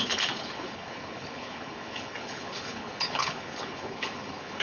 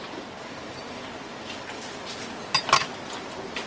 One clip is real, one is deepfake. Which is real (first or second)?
second